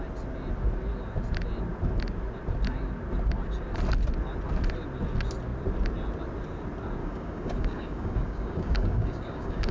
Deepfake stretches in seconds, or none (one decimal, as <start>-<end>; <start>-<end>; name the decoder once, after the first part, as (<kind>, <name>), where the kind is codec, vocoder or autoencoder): 7.0-9.7 (codec, DAC)